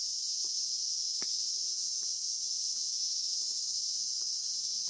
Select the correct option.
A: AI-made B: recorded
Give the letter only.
A